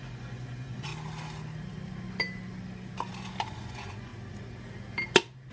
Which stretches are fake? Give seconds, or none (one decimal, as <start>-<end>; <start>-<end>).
0.0-0.9; 3.5-4.1